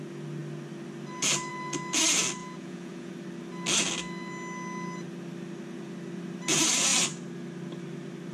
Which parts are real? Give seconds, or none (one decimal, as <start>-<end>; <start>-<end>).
0.0-2.4; 3.1-8.3